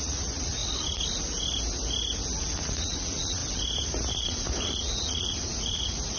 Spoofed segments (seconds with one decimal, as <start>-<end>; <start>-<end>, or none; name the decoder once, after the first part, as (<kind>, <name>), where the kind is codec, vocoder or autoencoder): 0.0-0.6 (vocoder, Vocos); 2.6-3.4; 4.1-6.2